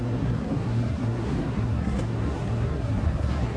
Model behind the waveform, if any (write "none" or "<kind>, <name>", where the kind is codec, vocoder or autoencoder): codec, SNAC